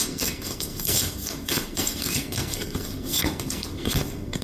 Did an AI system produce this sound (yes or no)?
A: yes